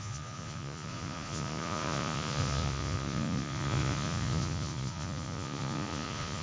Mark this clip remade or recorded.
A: remade